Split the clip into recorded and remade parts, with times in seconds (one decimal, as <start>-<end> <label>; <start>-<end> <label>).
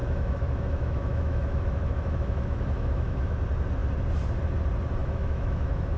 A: 0.0-3.4 remade; 3.4-5.0 recorded; 5.0-6.0 remade